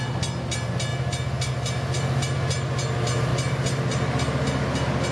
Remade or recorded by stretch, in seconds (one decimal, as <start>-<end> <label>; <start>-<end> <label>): 0.0-5.1 recorded